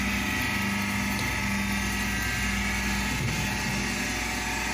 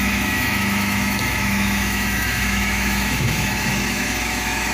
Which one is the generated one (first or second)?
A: second